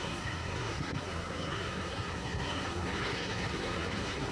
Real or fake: fake